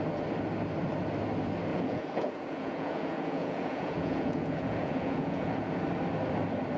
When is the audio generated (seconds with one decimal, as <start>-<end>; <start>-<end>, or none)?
1.7-5.8